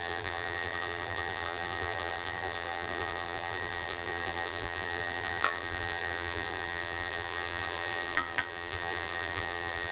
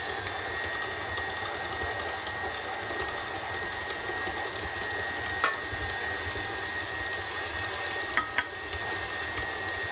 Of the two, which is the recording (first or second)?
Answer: second